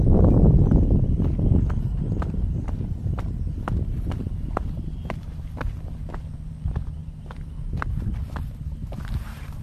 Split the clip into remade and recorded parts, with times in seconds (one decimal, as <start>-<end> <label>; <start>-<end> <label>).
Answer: 0.0-9.6 recorded